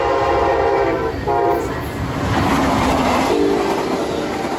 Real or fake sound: real